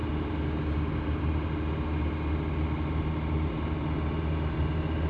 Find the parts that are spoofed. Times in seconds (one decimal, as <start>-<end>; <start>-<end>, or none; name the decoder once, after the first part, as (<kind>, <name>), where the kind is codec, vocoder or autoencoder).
none